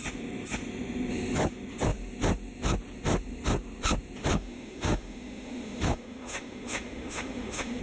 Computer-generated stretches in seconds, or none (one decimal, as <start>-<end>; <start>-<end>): 4.3-7.8